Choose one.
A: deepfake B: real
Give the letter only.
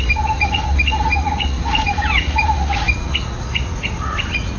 A